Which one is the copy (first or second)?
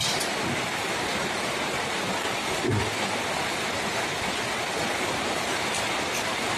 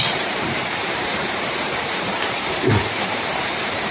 second